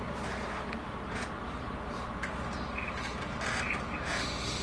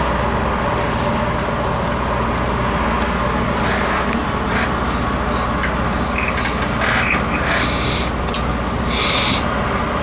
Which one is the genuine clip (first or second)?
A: second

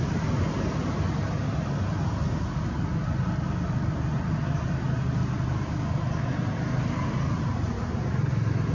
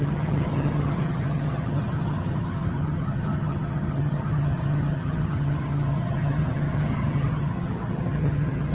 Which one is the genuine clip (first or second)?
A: first